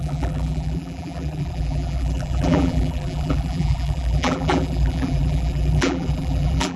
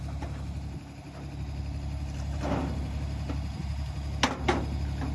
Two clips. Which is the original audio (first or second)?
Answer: second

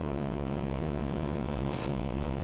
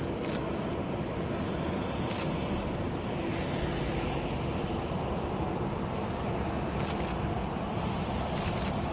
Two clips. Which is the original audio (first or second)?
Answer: second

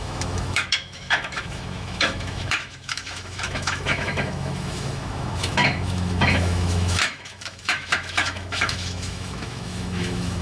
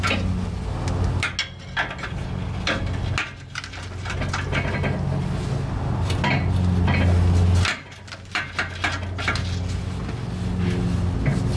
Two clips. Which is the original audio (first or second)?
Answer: second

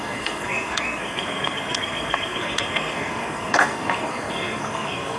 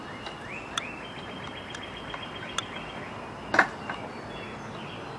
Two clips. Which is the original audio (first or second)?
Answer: second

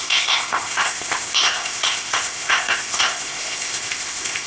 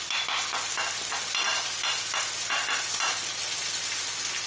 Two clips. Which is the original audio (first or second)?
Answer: second